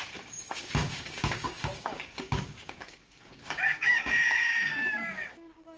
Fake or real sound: fake